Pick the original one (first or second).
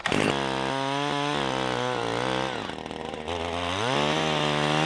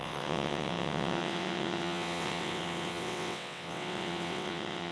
first